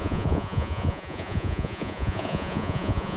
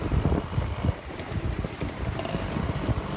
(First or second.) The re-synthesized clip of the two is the first